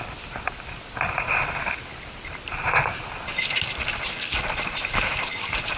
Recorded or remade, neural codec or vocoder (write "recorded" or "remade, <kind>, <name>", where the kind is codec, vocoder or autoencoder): recorded